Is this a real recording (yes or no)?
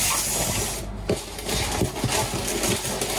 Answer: yes